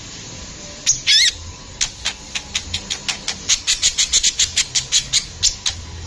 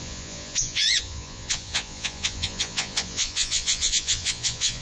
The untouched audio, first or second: first